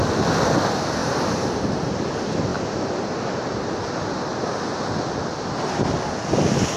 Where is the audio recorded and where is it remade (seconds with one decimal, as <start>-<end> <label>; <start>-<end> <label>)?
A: 0.0-1.0 recorded; 1.0-1.7 remade; 1.7-6.8 recorded